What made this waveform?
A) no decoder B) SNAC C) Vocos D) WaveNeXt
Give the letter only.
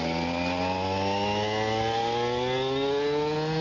A